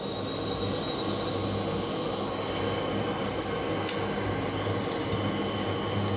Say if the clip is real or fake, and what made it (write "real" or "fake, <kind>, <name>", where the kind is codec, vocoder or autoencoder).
real